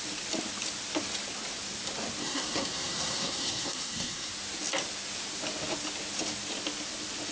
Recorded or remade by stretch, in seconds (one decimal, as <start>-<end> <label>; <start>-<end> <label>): 0.0-2.2 recorded; 2.2-4.3 remade; 4.3-7.3 recorded